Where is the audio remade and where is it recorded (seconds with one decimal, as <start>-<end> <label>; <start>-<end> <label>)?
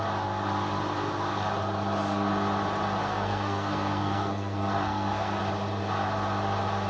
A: 0.0-3.0 recorded; 3.0-5.4 remade; 5.4-6.9 recorded